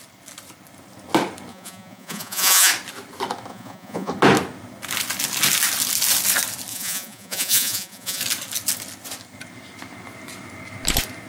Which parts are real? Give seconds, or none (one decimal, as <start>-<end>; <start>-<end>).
0.0-1.5; 2.7-3.5; 4.1-6.7; 8.2-11.3